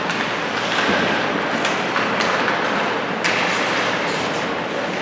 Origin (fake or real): real